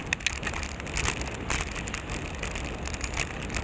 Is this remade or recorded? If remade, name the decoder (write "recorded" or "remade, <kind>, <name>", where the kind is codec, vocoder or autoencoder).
recorded